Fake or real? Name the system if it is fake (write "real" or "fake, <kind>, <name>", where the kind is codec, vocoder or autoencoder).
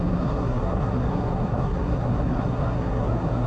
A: fake, codec, SNAC